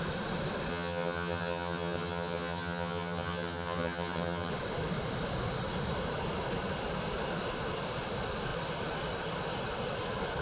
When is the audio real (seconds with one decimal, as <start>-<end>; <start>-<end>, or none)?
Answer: 0.0-0.7; 4.5-10.4